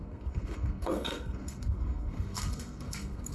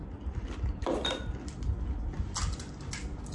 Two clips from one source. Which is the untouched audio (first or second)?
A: second